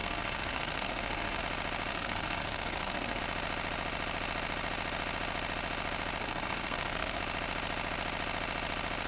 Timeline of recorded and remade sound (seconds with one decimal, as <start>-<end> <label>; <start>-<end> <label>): 0.0-1.4 remade; 1.4-1.9 recorded; 1.9-3.2 remade; 3.2-6.2 recorded; 6.2-7.2 remade; 7.2-9.1 recorded